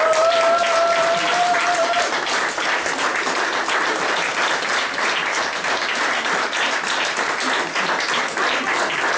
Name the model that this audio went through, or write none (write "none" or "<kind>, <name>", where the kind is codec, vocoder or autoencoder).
none